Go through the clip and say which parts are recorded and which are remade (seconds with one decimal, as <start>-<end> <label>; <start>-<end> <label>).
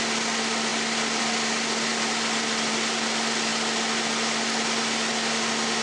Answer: 0.0-0.7 recorded; 0.7-1.2 remade; 1.2-1.9 recorded; 1.9-2.7 remade; 2.7-5.8 recorded